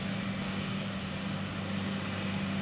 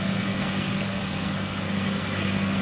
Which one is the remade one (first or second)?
second